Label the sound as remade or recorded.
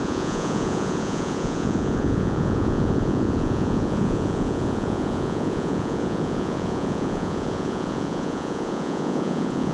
remade